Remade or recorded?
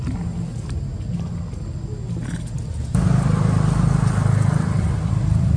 recorded